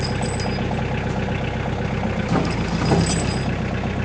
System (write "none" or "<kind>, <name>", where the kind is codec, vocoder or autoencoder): none